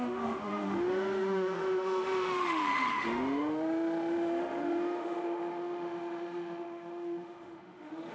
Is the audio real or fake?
fake